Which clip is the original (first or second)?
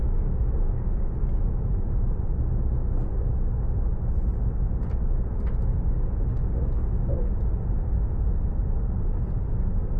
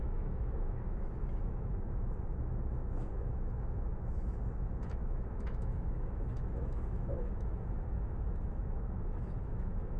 first